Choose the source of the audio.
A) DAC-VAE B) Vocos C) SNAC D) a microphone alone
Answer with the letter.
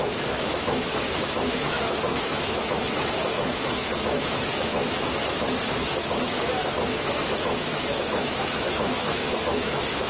A